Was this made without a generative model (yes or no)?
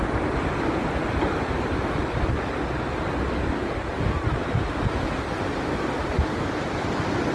yes